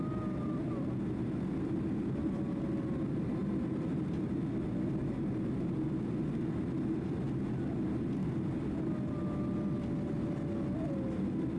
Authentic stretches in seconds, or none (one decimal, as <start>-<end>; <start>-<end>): 0.0-11.6